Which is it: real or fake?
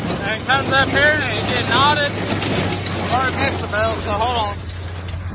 real